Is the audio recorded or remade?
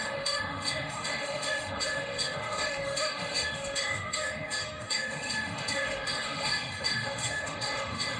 remade